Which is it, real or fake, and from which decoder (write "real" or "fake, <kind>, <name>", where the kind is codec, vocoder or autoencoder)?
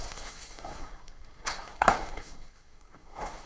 fake, codec, SNAC